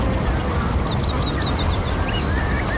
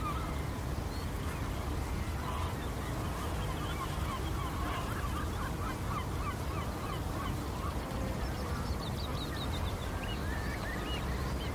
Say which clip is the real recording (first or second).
second